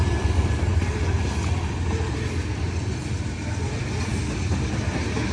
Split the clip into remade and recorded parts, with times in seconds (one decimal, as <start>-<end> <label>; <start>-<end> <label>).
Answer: 0.0-5.3 recorded